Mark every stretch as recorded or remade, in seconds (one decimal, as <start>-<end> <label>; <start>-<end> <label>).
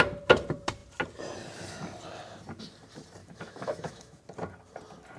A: 0.0-3.2 recorded; 3.2-4.2 remade; 4.2-5.2 recorded